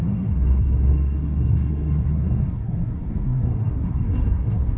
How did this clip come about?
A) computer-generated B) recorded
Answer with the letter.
A